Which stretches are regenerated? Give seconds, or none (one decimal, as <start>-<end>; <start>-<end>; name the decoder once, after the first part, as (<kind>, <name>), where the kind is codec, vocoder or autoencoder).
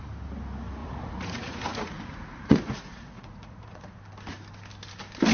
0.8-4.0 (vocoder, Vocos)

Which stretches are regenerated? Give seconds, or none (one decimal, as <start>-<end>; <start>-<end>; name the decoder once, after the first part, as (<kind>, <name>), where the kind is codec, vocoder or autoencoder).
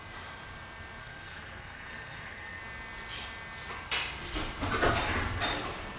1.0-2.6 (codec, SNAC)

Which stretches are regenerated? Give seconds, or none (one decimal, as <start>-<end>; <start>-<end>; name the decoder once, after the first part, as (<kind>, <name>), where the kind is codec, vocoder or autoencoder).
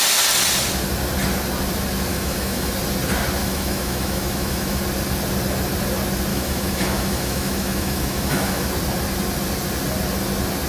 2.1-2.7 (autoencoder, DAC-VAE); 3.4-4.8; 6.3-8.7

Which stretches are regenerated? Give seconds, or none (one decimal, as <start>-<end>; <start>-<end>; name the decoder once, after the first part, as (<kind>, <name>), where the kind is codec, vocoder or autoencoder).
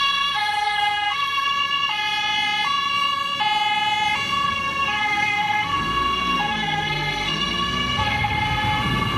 0.0-1.5 (codec, SNAC); 4.5-9.2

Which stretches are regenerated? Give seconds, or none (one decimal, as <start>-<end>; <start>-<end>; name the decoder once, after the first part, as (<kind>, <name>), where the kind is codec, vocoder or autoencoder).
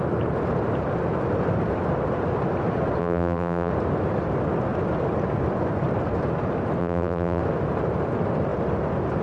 3.0-3.7 (vocoder, BigVGAN v2); 6.8-7.4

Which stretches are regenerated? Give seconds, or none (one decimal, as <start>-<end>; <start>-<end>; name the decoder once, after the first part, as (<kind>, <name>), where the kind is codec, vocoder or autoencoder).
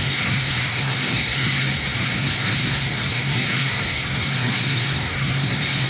0.0-5.9 (codec, SNAC)